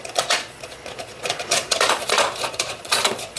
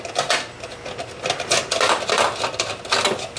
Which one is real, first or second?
second